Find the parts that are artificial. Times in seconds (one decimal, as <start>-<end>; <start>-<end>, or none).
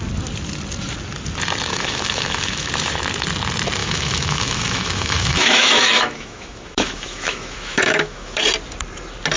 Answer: 1.7-2.7; 3.8-8.4